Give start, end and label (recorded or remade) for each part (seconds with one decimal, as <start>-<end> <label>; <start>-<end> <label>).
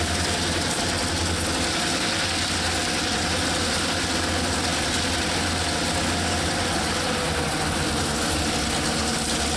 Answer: 0.0-9.6 recorded